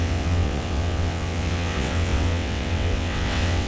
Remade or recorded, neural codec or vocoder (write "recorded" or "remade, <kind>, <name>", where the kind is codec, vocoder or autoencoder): remade, vocoder, WaveNeXt